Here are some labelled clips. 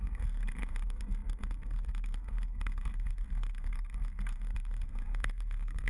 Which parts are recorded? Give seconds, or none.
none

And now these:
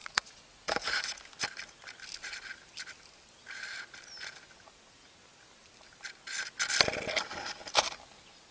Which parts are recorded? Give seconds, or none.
1.1-8.5

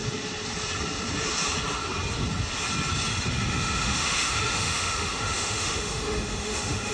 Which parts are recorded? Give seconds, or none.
0.0-3.3